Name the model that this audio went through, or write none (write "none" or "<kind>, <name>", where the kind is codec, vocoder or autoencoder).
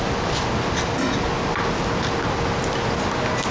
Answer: none